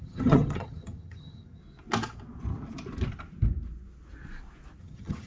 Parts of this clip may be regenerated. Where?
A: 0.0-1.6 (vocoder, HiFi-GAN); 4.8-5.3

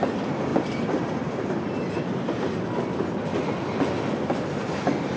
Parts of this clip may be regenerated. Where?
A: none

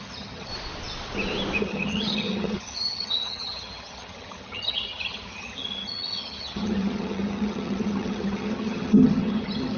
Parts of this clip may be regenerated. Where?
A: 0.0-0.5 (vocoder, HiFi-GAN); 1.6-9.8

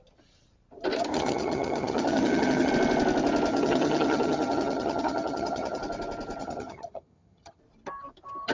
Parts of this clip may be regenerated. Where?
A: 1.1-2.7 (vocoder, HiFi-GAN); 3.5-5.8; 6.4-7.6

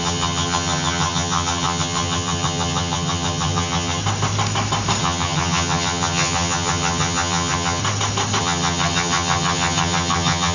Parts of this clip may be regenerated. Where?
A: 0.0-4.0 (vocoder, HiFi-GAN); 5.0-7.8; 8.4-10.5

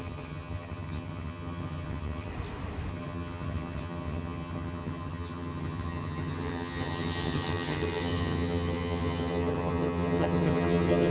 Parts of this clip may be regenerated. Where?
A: 0.0-2.3 (vocoder, HiFi-GAN); 2.9-11.1

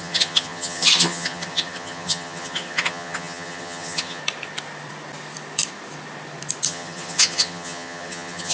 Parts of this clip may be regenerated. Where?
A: 0.0-4.2 (vocoder, HiFi-GAN); 6.7-8.5